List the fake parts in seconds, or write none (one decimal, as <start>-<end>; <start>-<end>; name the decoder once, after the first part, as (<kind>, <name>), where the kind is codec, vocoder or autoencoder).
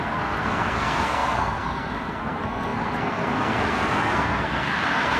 0.0-5.2 (codec, SNAC)